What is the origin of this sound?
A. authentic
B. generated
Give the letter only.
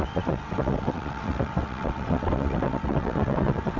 B